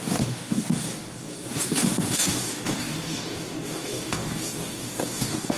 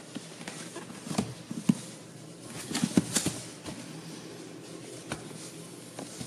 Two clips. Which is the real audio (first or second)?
second